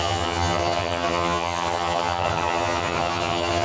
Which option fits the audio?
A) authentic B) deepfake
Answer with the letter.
B